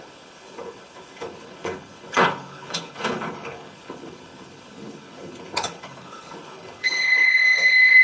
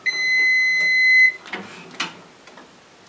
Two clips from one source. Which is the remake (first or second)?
first